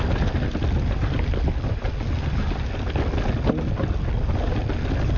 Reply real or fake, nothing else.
real